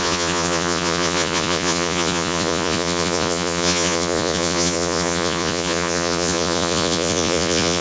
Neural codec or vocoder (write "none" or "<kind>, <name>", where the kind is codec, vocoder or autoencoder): vocoder, Vocos